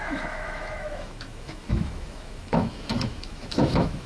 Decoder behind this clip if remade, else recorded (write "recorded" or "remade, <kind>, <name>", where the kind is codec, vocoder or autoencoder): remade, autoencoder, DAC-VAE